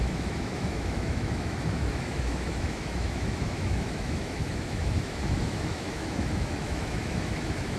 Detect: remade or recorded remade